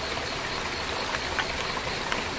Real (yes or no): yes